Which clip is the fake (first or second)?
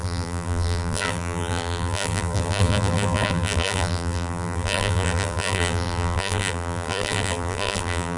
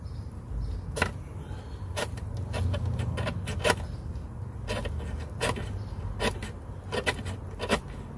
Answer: first